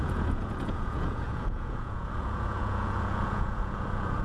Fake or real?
fake